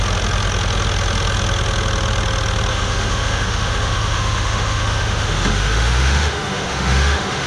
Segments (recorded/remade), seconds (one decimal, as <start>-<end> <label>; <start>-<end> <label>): 0.0-2.7 recorded; 2.7-7.5 remade